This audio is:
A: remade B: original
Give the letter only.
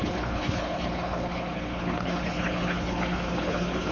A